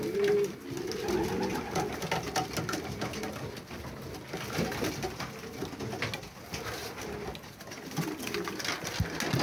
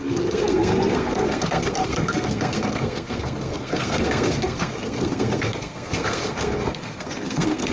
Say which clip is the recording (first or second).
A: first